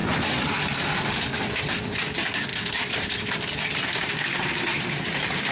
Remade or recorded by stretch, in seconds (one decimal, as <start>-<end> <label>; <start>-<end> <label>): 0.0-2.5 recorded; 2.5-4.8 remade; 4.8-5.5 recorded